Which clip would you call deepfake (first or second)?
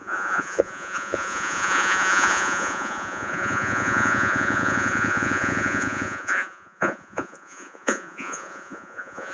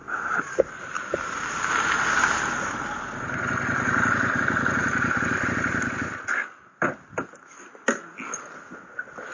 first